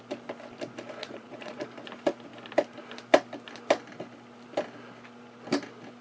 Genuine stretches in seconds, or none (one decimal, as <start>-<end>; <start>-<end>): 0.0-1.0; 1.6-6.0